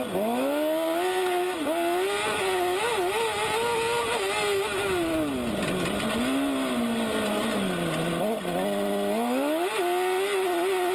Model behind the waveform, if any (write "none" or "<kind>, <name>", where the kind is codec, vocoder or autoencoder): none